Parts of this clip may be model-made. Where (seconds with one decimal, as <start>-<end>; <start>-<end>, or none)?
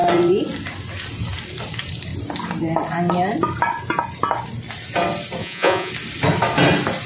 5.4-5.9